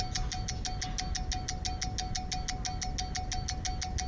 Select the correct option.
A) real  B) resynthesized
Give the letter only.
A